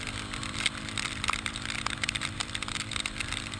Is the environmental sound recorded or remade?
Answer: remade